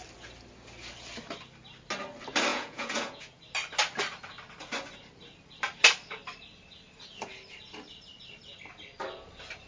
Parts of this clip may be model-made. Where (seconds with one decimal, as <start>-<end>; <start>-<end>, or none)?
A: 2.5-3.4